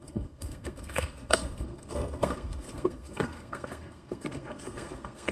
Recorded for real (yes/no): no